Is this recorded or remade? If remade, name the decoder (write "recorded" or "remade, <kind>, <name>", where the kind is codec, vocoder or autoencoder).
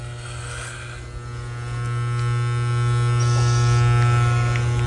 recorded